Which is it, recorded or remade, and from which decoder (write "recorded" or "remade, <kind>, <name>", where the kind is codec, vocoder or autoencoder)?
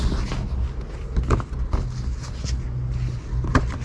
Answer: recorded